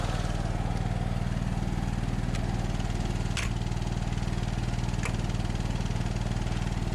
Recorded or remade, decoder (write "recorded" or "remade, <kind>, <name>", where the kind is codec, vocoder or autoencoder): recorded